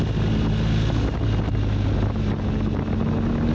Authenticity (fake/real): real